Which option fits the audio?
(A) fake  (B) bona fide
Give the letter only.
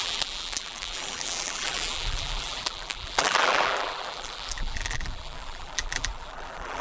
A